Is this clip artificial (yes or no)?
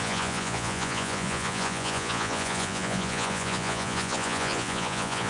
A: yes